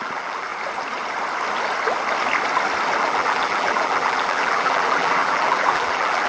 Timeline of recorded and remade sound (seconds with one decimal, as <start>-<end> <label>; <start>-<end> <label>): 0.0-0.5 remade; 0.5-3.0 recorded; 3.0-6.3 remade